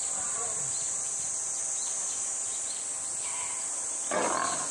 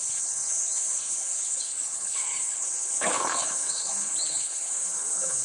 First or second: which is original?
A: first